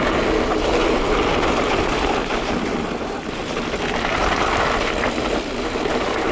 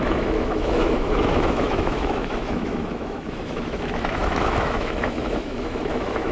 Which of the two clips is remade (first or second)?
second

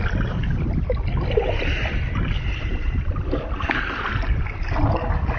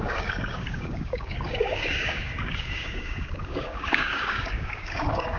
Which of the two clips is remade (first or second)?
second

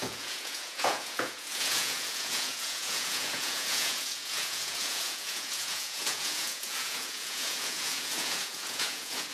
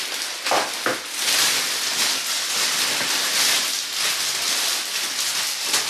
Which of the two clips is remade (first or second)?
first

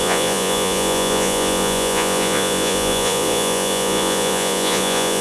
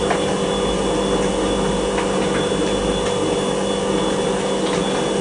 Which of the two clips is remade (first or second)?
first